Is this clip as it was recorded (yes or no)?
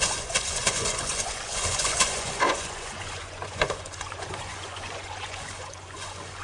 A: no